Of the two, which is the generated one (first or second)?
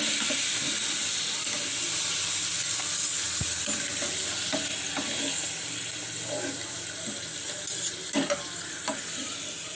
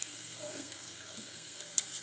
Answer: second